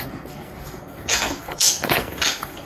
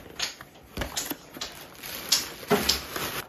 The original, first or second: second